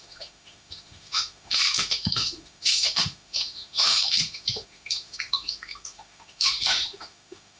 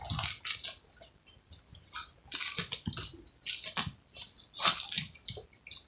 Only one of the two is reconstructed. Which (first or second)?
first